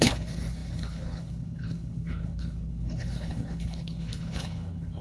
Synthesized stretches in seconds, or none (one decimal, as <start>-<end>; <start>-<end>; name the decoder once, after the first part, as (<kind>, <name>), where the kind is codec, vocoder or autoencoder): 0.0-5.0 (codec, HILCodec)